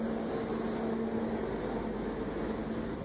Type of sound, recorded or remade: recorded